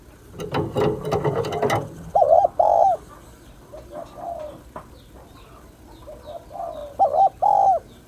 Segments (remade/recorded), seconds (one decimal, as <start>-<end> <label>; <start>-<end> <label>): 0.0-8.1 recorded